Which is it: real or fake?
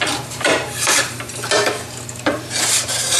fake